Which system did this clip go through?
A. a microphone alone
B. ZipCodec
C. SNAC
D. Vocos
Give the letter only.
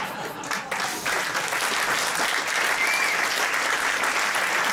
A